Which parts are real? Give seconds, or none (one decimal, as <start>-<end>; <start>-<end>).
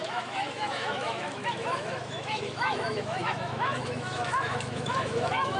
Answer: none